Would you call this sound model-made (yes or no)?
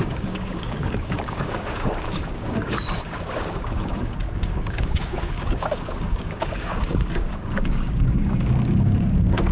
yes